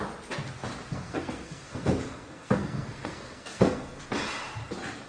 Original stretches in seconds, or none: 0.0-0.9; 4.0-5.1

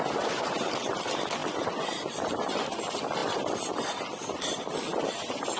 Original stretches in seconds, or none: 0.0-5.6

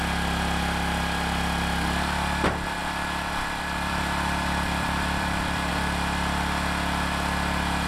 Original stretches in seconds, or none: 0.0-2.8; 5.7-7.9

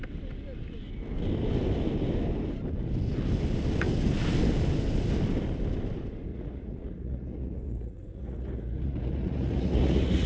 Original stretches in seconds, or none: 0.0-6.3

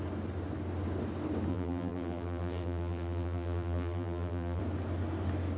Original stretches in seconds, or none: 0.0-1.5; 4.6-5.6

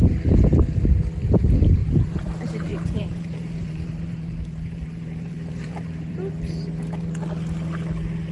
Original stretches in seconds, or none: 0.0-1.8; 2.3-2.7; 7.1-8.3

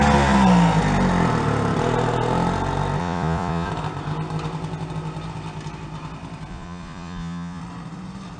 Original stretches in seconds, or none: 0.0-3.0; 3.7-6.5; 7.6-8.4

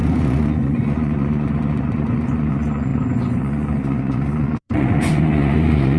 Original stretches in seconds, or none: none